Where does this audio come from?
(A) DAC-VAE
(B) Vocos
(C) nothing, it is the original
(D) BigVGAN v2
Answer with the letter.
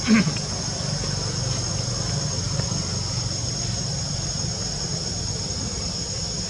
C